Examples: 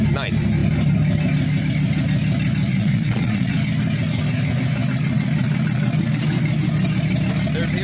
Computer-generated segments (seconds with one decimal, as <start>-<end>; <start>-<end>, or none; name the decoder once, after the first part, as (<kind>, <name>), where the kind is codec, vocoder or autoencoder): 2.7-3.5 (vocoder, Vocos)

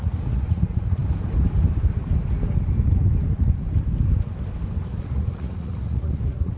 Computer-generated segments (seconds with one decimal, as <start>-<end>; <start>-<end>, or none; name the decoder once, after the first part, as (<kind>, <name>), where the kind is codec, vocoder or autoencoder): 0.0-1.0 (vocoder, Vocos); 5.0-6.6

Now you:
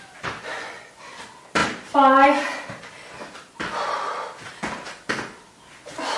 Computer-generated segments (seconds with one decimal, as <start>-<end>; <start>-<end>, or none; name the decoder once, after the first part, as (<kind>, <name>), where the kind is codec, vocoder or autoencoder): 0.4-1.0 (vocoder, Vocos)

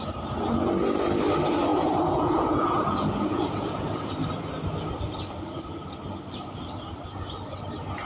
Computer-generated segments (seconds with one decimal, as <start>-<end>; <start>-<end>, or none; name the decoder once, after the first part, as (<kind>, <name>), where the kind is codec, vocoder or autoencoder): 1.7-4.1 (vocoder, Vocos)

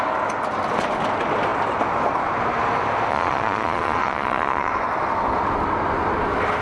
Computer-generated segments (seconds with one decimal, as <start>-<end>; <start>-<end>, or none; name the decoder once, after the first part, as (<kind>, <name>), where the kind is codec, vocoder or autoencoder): 3.1-4.7 (vocoder, Vocos)